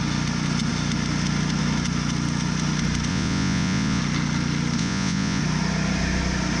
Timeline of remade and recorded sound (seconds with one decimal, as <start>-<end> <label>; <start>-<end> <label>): 0.0-3.1 recorded; 3.1-4.0 remade; 4.0-4.8 recorded; 4.8-5.4 remade; 5.4-6.6 recorded